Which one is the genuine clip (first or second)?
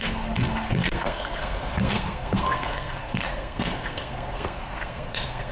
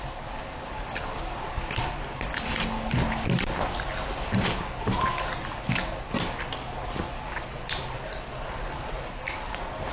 second